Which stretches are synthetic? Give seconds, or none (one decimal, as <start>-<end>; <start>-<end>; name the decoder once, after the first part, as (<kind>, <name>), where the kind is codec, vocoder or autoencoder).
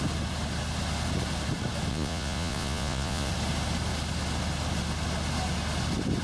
1.9-3.3 (vocoder, Vocos)